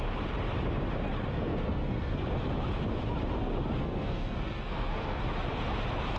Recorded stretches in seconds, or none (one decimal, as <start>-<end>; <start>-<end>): 0.0-1.3; 2.2-3.8; 5.2-6.2